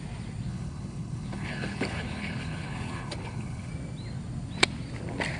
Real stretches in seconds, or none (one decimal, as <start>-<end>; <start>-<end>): 0.0-0.5; 3.7-5.4